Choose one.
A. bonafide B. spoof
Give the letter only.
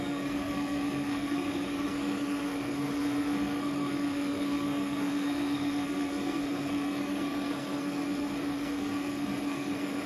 B